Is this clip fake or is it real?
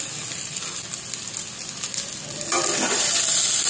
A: real